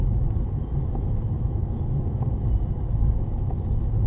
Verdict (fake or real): real